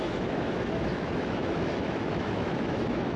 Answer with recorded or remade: remade